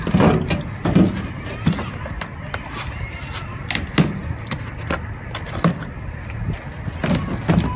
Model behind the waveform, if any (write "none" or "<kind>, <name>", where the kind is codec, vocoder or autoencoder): none